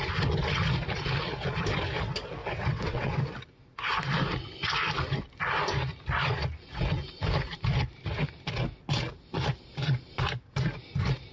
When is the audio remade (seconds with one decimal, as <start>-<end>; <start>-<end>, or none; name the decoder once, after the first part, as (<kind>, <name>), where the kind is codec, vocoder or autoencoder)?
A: 2.4-3.2 (vocoder, WaveNeXt)